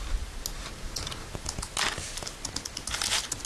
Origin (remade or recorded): recorded